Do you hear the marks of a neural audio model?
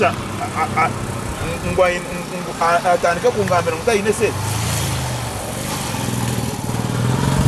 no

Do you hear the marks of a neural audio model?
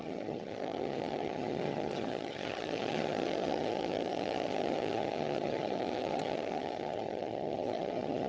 yes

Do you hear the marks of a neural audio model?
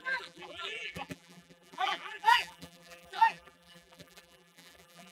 yes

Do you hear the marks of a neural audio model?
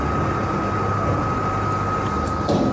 no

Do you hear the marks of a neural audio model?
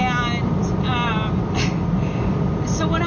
no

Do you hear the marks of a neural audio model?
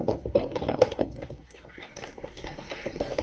yes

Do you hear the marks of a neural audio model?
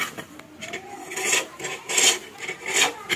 no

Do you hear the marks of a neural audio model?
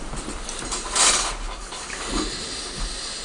no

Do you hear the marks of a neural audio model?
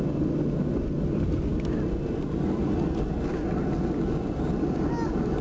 no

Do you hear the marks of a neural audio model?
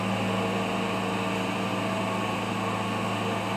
no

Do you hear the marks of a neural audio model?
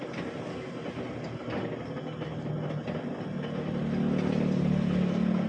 no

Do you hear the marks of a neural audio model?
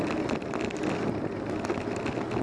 no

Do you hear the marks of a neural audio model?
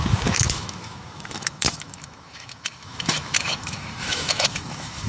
yes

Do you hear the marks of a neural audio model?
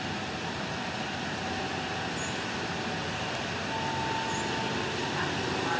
no